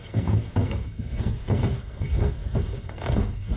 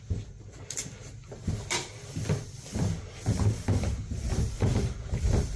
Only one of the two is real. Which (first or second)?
second